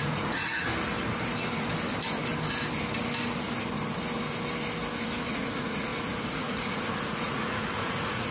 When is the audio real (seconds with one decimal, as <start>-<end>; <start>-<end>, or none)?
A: 0.7-5.2